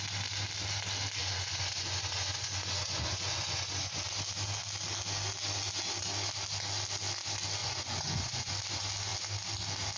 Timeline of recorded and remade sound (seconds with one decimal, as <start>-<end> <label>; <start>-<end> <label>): 0.0-1.2 recorded; 1.2-4.0 remade; 4.0-7.6 recorded; 7.6-8.5 remade; 8.5-10.0 recorded